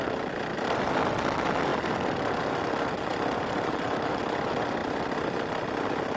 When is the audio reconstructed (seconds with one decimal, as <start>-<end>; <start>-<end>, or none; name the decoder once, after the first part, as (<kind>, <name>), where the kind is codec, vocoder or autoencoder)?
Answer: 0.5-1.2 (vocoder, BigVGAN v2); 3.1-4.2